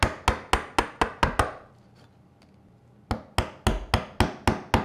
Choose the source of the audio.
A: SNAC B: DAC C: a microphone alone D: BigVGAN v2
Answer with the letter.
C